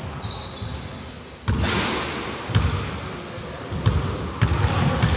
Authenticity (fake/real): real